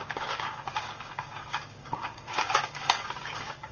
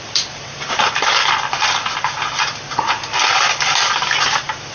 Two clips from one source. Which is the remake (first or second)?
first